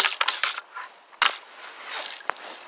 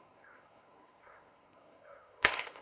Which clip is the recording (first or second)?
first